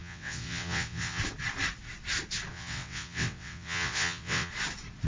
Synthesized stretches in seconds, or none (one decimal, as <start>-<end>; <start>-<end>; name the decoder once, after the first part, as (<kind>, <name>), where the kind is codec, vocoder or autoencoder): 0.0-1.2 (vocoder, WaveNeXt); 2.5-4.5